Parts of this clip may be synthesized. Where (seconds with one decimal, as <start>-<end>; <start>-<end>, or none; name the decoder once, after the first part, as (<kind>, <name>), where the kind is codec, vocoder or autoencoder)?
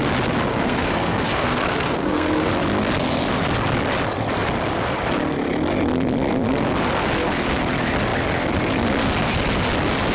0.5-2.5 (codec, SNAC)